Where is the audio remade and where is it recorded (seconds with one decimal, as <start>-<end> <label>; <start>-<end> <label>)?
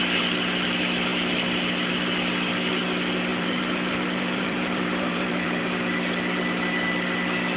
0.0-3.3 recorded; 3.3-5.6 remade; 5.6-7.6 recorded